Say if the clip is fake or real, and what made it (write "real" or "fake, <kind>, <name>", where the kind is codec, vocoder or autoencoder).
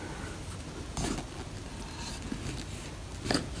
real